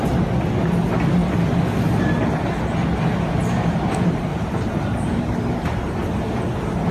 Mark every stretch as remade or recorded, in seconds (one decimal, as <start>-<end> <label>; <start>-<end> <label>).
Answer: 0.0-4.3 recorded; 4.3-6.0 remade; 6.0-6.9 recorded